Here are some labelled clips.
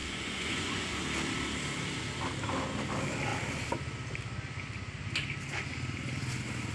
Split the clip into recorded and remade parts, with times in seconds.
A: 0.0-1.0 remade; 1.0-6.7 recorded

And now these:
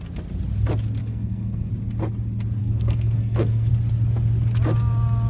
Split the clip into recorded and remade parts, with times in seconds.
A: 0.0-1.0 recorded; 1.0-1.7 remade; 1.7-2.6 recorded; 2.6-3.7 remade; 3.7-5.3 recorded

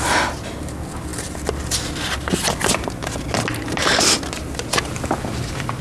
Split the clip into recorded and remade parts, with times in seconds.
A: 0.0-5.8 recorded

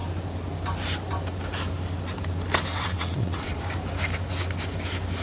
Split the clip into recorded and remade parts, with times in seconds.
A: 0.0-2.7 recorded; 2.7-3.6 remade; 3.6-5.2 recorded

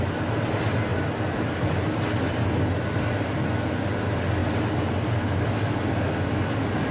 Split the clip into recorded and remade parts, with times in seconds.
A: 0.0-6.9 recorded

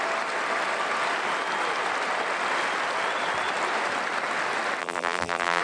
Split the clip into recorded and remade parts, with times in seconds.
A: 0.0-4.8 recorded; 4.8-5.6 remade

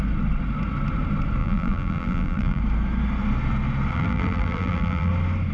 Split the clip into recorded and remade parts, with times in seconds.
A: 0.0-1.4 recorded; 1.4-2.6 remade; 2.6-3.9 recorded; 3.9-5.1 remade; 5.1-5.5 recorded